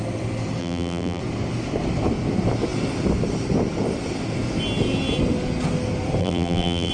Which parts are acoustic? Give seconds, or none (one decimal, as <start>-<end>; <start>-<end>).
0.0-0.6; 1.2-6.2